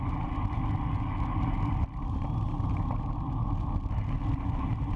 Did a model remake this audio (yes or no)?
no